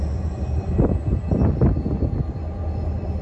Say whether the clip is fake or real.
real